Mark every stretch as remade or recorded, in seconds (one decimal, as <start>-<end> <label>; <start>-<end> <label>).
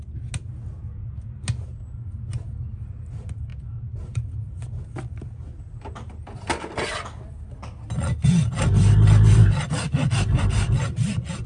0.0-11.5 recorded